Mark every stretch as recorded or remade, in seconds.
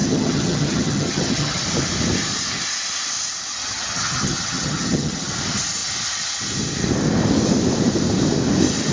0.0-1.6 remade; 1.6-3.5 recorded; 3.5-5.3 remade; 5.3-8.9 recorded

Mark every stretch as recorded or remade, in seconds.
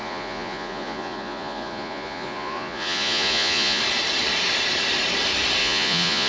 0.0-3.8 remade; 3.8-5.6 recorded; 5.6-6.3 remade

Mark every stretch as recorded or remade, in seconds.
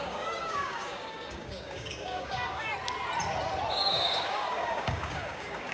0.0-2.7 remade; 2.7-3.7 recorded; 3.7-5.7 remade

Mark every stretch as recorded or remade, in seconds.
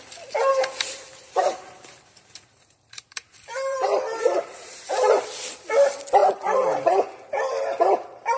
0.0-0.5 recorded; 0.5-4.8 remade; 4.8-6.2 recorded; 6.2-6.8 remade; 6.8-8.4 recorded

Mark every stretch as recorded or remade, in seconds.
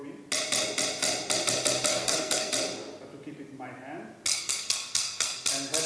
0.0-1.9 recorded; 1.9-2.5 remade; 2.5-4.3 recorded; 4.3-5.4 remade; 5.4-5.9 recorded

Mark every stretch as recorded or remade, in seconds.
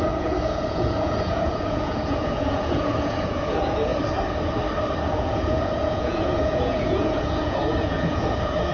0.0-3.9 remade; 3.9-5.0 recorded; 5.0-8.7 remade